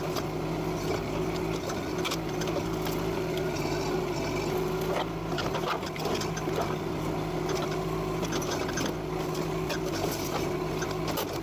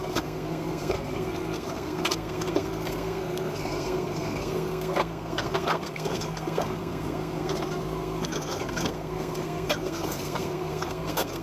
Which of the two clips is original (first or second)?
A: first